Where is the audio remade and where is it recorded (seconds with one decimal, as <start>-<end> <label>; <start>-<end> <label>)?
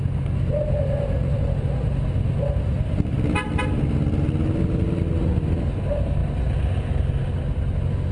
0.0-8.1 recorded